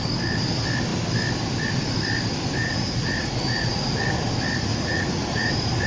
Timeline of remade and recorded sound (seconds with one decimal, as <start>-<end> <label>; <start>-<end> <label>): 0.0-2.6 recorded; 2.6-4.0 remade; 4.0-4.7 recorded; 4.7-5.5 remade; 5.5-5.9 recorded